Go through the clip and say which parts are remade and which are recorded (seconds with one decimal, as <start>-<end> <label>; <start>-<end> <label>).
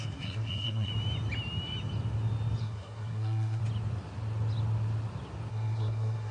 0.0-0.9 remade; 0.9-2.6 recorded; 2.6-3.6 remade; 3.6-5.5 recorded; 5.5-6.3 remade